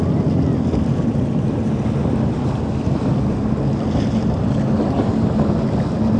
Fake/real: real